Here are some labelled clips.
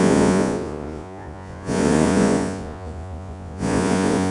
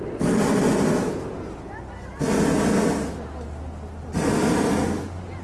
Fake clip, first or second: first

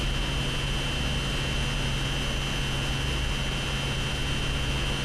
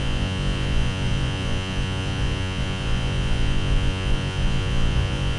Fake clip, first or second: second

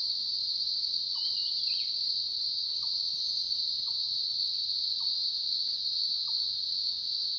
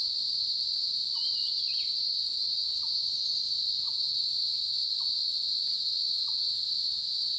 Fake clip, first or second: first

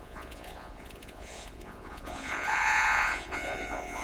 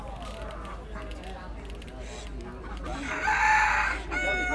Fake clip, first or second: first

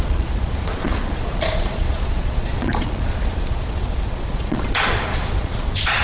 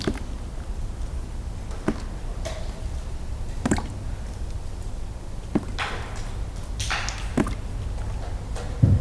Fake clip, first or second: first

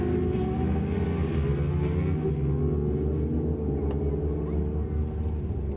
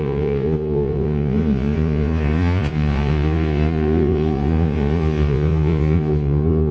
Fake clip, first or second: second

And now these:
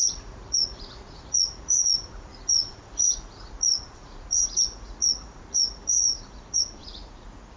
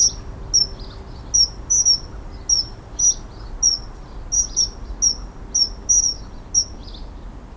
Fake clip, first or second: first